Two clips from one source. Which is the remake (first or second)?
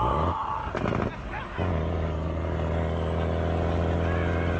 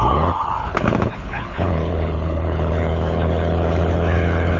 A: second